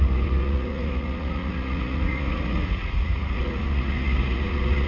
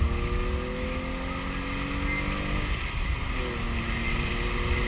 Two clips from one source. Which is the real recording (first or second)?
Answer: second